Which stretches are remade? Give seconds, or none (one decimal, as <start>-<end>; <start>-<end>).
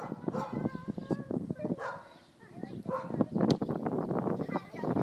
0.0-2.6; 4.1-5.0